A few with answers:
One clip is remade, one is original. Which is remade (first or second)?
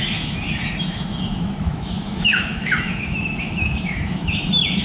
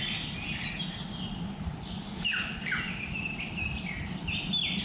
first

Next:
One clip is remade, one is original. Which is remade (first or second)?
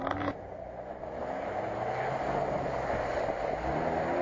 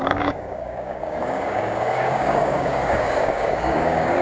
second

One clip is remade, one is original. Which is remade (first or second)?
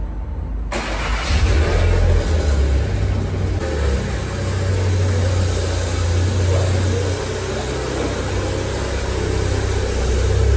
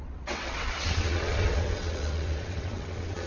second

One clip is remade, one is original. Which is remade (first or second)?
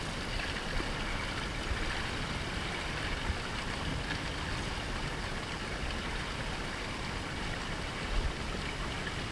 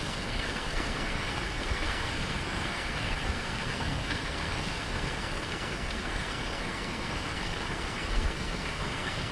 second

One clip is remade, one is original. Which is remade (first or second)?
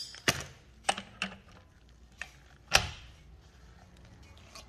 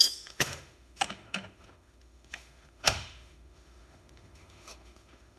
second